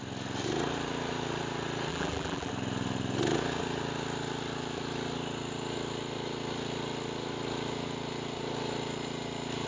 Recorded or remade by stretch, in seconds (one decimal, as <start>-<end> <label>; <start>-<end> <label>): 0.0-1.9 recorded; 1.9-2.5 remade; 2.5-9.7 recorded